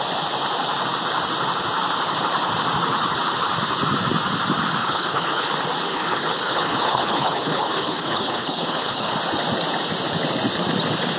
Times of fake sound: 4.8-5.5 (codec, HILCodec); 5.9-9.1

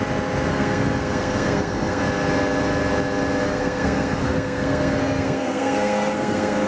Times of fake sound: 0.5-2.0 (codec, SNAC); 3.4-6.7